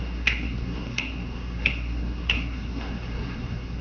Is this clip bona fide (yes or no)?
no